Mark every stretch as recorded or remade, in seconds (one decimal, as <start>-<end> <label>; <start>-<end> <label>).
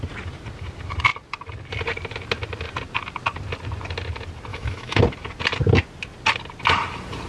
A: 0.0-4.5 recorded; 4.5-5.0 remade; 5.0-7.3 recorded